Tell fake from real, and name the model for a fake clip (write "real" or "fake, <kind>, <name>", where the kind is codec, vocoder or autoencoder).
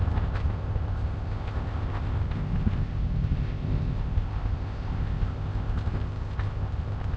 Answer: fake, codec, ZipCodec